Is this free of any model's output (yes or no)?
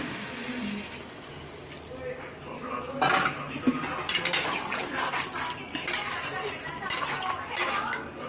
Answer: yes